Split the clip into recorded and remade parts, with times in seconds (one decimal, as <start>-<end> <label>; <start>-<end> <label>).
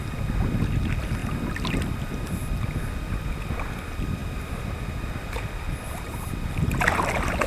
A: 0.0-7.5 recorded